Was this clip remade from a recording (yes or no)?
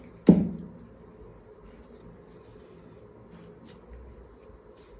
no